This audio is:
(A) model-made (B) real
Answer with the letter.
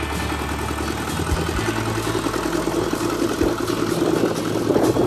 B